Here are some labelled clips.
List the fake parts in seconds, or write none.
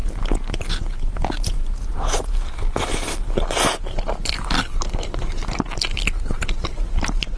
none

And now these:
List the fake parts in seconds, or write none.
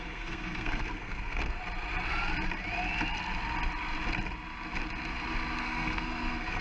0.0-1.6 (codec, SNAC); 5.6-6.6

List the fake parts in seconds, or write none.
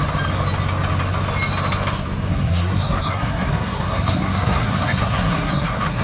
2.3-6.0 (codec, SNAC)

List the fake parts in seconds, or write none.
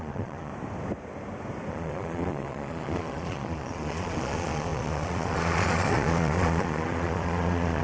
0.0-0.5 (vocoder, Vocos); 1.7-7.8